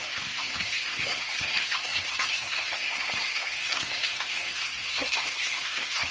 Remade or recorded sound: remade